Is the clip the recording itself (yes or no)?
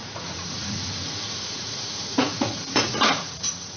no